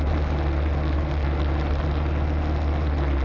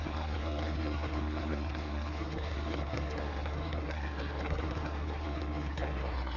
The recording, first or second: first